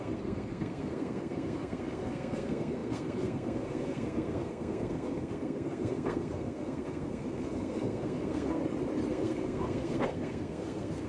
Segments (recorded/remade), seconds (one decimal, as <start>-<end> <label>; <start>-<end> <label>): 0.0-8.6 remade; 8.6-9.1 recorded; 9.1-11.1 remade